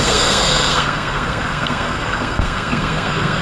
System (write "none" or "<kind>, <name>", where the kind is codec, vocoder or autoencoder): codec, SNAC